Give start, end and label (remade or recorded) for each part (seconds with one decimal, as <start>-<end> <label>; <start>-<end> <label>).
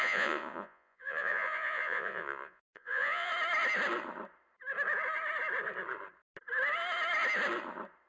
0.0-3.3 remade; 3.3-8.1 recorded